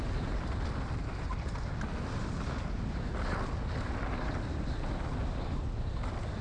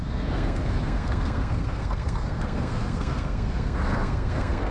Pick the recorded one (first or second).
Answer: first